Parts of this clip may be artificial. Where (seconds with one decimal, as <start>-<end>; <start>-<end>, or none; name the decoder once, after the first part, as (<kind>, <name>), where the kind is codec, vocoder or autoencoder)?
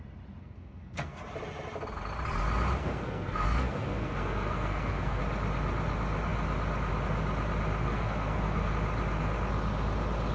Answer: 0.4-1.2 (codec, SNAC); 2.8-5.2; 7.8-8.7